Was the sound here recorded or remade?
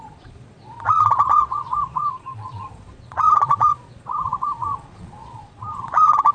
remade